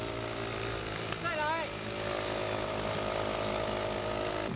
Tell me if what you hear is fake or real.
real